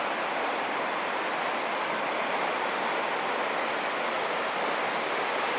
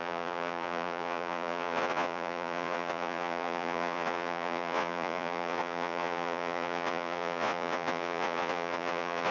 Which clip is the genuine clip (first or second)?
first